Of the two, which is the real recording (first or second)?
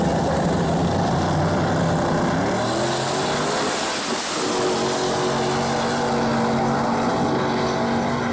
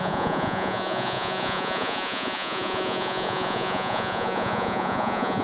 first